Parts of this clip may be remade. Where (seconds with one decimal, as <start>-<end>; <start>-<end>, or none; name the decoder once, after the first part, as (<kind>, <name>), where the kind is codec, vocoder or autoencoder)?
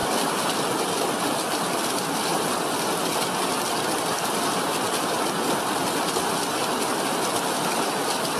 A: none